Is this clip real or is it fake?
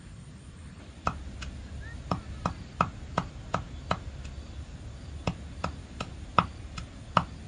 real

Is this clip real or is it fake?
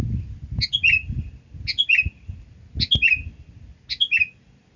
real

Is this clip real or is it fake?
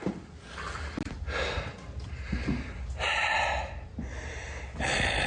real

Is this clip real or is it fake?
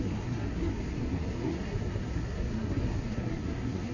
fake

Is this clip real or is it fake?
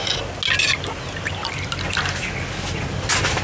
real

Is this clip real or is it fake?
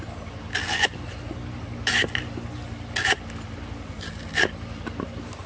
real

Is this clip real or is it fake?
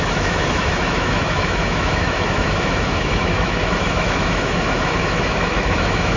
fake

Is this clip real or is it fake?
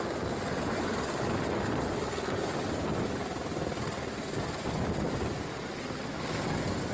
real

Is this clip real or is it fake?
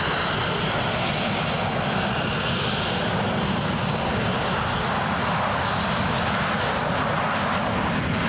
real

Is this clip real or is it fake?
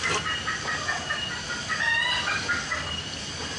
real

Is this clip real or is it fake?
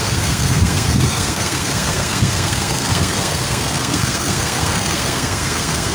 fake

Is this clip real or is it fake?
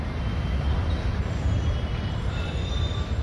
fake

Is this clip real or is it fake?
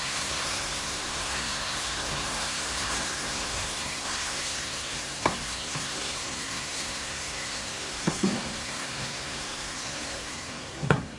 fake